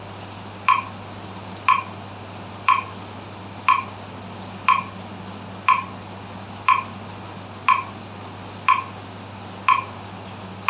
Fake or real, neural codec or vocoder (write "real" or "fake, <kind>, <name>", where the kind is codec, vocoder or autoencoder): real